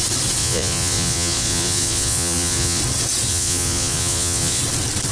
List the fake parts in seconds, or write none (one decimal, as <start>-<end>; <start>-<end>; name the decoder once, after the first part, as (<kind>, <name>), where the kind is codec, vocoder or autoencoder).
0.4-2.8 (vocoder, Vocos); 3.3-4.6

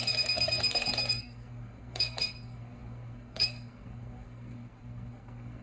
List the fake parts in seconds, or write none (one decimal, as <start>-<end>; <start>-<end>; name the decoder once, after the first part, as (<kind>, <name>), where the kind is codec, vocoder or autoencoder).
0.0-5.6 (codec, SNAC)